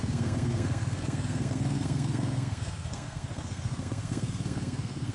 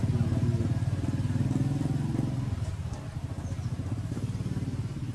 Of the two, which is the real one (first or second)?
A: second